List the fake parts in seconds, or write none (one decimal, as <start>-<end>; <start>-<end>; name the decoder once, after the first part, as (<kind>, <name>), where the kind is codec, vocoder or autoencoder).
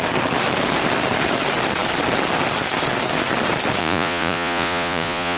3.8-5.4 (vocoder, Vocos)